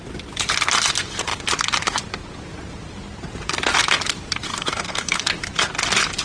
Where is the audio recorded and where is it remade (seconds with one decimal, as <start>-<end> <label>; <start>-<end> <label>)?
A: 0.0-4.5 recorded; 4.5-5.2 remade; 5.2-6.2 recorded